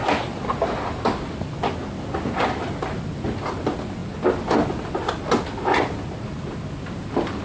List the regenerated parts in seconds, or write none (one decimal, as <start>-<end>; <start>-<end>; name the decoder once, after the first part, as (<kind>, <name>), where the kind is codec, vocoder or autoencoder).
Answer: none